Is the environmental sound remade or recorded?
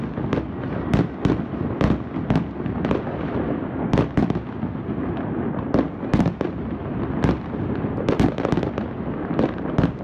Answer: recorded